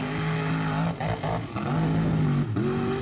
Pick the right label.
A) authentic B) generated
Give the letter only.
A